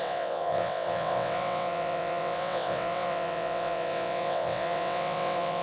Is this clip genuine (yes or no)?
no